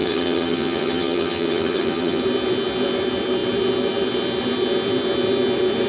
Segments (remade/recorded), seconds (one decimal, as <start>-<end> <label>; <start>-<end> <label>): 0.0-2.2 remade; 2.2-5.9 recorded